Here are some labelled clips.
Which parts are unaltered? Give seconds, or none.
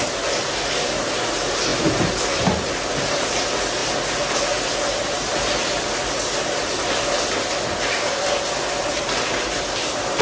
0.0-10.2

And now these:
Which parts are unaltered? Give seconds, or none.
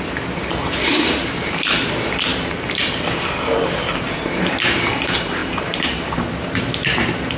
2.3-3.7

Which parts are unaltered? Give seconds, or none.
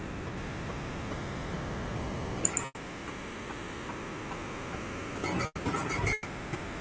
0.0-1.9; 2.5-3.0; 3.7-6.8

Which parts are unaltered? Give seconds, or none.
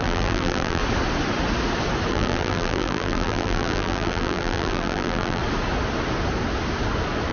0.8-2.1; 5.4-7.3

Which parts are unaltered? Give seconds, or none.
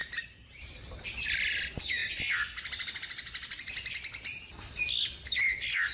0.9-5.9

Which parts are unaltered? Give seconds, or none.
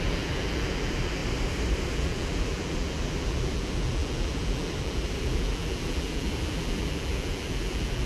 1.2-1.9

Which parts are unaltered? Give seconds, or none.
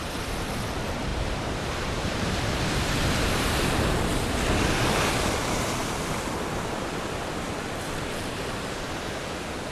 0.0-1.1; 4.1-9.7